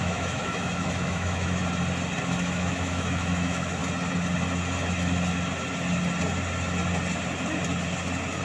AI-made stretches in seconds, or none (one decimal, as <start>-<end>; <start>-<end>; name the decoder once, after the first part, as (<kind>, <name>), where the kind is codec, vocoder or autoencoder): 0.0-1.6 (autoencoder, DAC-VAE); 2.2-3.8